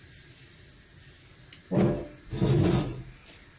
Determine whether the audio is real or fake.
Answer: real